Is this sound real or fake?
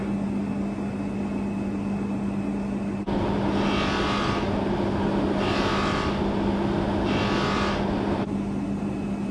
real